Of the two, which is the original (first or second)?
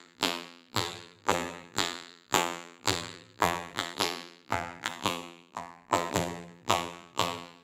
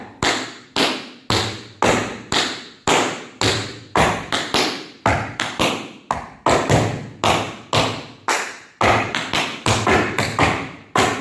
second